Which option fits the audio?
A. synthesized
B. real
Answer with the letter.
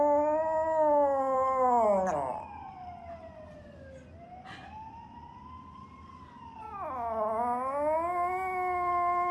B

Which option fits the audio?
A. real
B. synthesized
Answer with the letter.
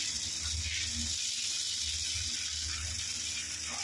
A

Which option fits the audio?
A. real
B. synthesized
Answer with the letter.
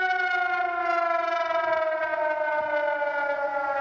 A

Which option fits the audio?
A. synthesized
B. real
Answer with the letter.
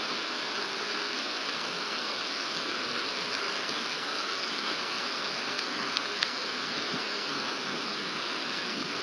A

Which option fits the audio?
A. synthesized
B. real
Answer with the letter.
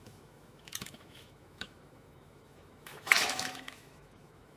A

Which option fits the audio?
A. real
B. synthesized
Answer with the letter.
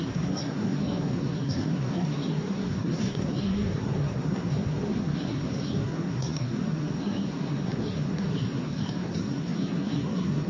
B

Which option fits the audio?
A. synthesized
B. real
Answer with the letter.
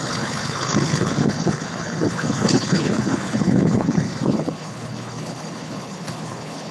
A